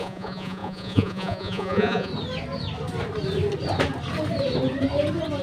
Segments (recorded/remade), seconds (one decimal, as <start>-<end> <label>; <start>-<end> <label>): 0.0-2.1 remade; 2.1-5.4 recorded